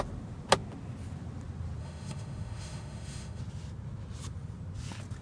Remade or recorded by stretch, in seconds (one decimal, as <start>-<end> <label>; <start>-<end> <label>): 0.0-1.8 recorded; 1.8-3.4 remade; 3.4-5.2 recorded